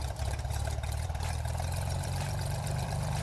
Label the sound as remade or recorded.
remade